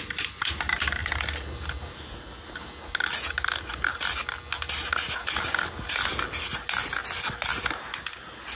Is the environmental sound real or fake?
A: real